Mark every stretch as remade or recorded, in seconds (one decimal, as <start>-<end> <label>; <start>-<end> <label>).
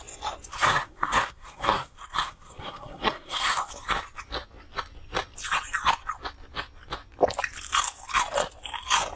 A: 0.0-0.5 recorded; 0.5-3.7 remade; 3.7-9.2 recorded